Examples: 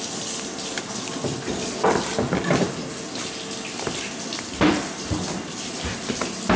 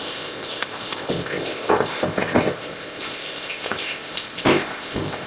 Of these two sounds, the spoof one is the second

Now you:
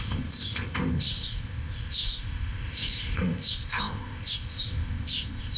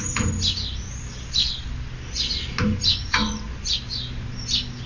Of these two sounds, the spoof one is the first